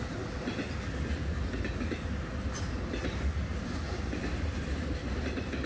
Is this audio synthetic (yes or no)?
no